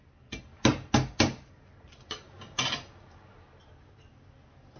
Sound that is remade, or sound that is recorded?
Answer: recorded